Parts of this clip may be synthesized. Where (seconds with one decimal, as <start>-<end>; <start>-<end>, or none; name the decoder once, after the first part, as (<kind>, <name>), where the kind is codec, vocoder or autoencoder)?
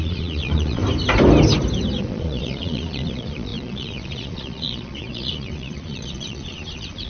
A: 0.0-0.8 (vocoder, Vocos); 2.0-7.1